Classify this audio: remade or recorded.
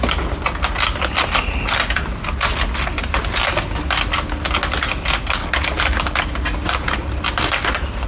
recorded